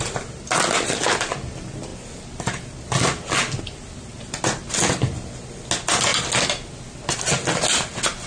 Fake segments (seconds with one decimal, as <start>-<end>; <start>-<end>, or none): none